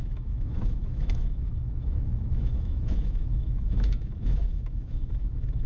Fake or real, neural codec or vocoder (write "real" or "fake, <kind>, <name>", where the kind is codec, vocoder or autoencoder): fake, autoencoder, DAC-VAE